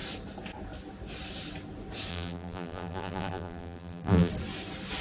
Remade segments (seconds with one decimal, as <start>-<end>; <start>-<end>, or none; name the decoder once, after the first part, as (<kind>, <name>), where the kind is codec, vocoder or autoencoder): 2.1-4.3 (vocoder, BigVGAN v2)